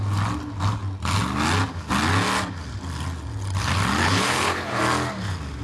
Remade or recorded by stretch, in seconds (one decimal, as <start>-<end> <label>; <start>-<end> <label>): 0.0-4.0 recorded; 4.0-4.8 remade; 4.8-5.6 recorded

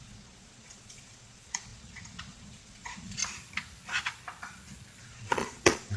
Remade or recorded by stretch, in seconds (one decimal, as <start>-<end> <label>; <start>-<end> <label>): 0.0-3.2 remade; 3.2-5.0 recorded; 5.0-6.0 remade

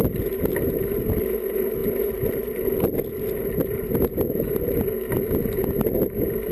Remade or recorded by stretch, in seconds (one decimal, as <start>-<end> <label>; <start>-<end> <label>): 0.0-6.5 recorded

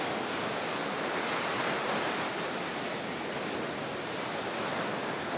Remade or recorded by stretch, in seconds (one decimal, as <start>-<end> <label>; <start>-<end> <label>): 0.0-5.4 recorded

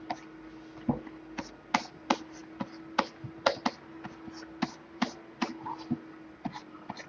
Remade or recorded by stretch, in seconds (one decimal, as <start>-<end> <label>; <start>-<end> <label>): 0.0-7.1 recorded